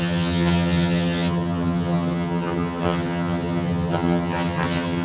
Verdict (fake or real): fake